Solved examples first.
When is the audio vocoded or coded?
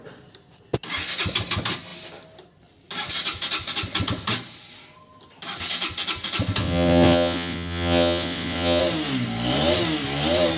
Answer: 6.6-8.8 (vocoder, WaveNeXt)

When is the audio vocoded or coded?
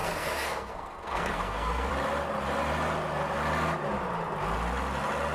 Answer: 0.0-1.9 (codec, SNAC)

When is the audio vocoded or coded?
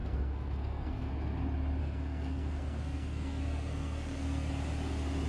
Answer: 0.0-1.1 (codec, SNAC); 1.8-4.5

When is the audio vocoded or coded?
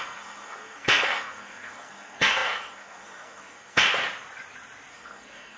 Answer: 0.0-3.8 (codec, SNAC); 4.9-5.6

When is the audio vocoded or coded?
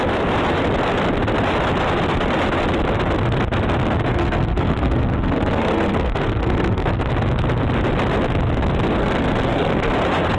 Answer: 4.1-7.1 (codec, SNAC); 9.0-9.9